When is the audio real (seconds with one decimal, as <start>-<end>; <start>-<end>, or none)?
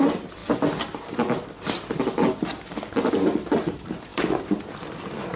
0.0-5.4